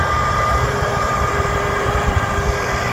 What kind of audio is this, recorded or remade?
remade